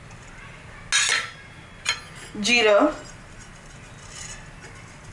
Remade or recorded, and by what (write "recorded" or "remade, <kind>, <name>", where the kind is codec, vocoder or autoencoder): recorded